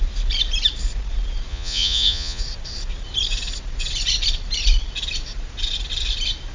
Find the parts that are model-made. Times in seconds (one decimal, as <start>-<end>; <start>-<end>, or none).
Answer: 1.5-2.4